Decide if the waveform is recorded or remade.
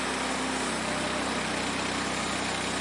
recorded